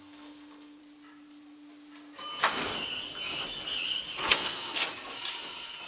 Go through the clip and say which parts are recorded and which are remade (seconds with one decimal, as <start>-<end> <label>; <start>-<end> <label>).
0.0-0.8 remade; 0.8-4.2 recorded; 4.2-4.8 remade; 4.8-5.9 recorded